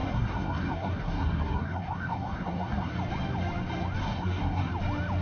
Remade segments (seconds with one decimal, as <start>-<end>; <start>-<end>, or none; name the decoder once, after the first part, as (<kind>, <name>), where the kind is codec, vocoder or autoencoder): 0.0-2.9 (codec, SNAC); 4.0-4.7